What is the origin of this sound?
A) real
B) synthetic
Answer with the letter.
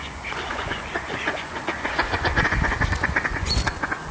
B